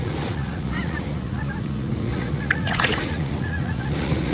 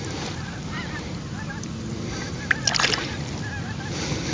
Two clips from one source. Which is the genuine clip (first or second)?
second